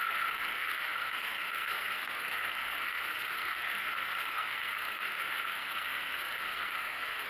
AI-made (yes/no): yes